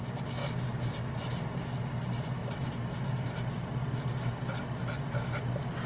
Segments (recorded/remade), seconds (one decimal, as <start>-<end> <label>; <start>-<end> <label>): 0.0-5.9 recorded